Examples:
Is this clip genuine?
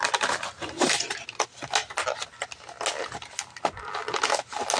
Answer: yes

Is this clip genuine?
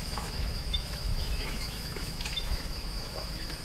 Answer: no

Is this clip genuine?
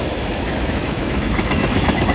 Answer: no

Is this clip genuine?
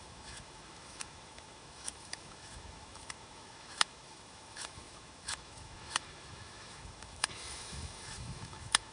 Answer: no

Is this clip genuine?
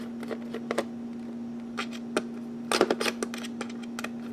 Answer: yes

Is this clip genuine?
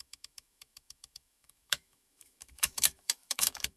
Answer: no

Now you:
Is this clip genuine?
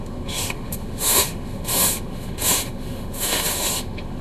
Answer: no